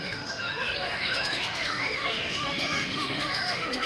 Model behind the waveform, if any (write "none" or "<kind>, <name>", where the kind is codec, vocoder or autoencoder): autoencoder, DAC-VAE